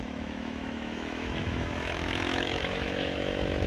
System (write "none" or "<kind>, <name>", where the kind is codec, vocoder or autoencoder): autoencoder, DAC-VAE